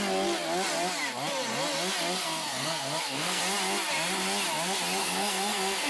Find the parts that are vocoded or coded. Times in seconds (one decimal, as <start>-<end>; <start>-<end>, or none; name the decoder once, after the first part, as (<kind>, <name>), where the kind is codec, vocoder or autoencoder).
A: 2.2-3.4 (codec, SNAC); 5.0-5.9